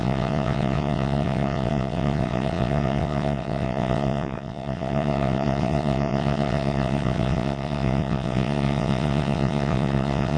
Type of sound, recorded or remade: remade